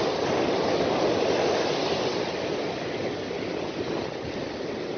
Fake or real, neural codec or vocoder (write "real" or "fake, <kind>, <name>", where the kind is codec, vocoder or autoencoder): real